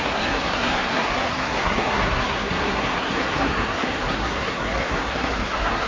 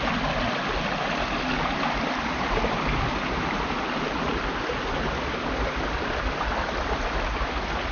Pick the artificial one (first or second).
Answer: first